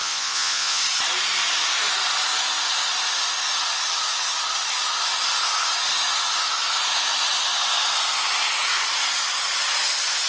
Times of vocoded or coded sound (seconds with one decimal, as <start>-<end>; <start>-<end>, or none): 0.0-0.8